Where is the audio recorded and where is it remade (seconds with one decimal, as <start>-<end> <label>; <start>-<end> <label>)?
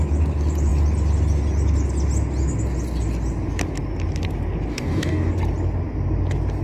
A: 0.0-4.7 recorded; 4.7-5.3 remade; 5.3-6.6 recorded